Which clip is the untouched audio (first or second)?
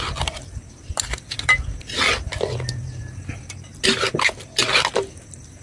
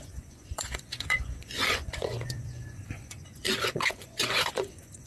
first